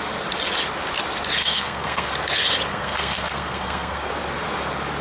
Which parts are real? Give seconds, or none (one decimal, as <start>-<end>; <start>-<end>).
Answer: 0.0-1.4; 2.1-2.7; 4.1-5.0